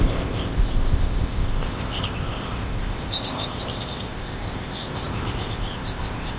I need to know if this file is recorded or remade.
remade